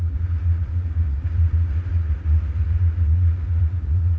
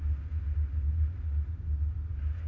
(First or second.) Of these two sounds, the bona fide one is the second